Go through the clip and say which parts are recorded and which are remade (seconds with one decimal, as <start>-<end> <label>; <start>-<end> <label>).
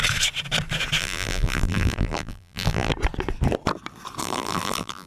0.0-1.0 recorded; 1.0-2.9 remade; 2.9-4.2 recorded; 4.2-5.1 remade